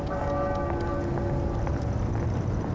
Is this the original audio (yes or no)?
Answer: yes